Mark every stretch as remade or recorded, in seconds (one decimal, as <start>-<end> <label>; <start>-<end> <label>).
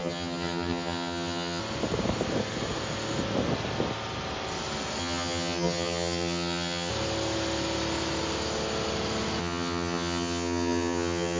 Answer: 0.0-1.6 remade; 1.6-5.0 recorded; 5.0-6.9 remade; 6.9-9.4 recorded; 9.4-11.4 remade